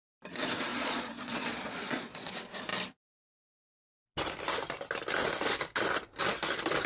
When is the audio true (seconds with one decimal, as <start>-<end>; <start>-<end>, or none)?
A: 0.0-0.7; 2.3-6.9